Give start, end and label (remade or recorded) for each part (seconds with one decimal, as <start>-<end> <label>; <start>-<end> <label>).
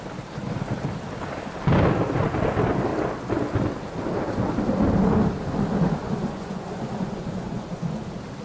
0.0-6.0 recorded; 6.0-8.0 remade; 8.0-8.4 recorded